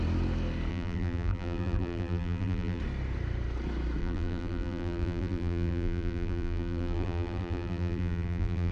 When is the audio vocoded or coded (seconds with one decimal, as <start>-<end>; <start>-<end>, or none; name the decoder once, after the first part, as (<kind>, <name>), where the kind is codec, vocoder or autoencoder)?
0.7-2.8 (vocoder, BigVGAN v2); 4.0-8.7